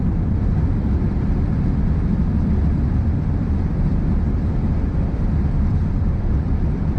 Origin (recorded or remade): remade